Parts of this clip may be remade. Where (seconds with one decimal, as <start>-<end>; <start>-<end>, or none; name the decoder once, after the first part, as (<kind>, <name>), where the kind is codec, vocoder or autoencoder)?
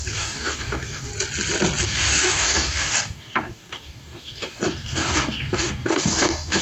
0.0-1.1 (codec, DAC); 1.8-6.6